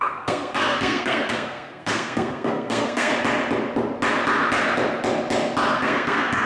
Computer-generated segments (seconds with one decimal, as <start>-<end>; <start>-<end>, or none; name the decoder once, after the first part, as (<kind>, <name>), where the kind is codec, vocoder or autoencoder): 0.0-3.1 (codec, SNAC); 5.7-6.5